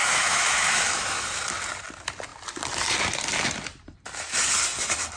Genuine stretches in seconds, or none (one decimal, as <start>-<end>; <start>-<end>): 1.4-5.2